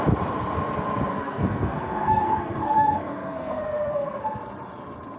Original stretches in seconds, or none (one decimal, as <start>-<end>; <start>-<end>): 0.0-1.1; 4.2-5.2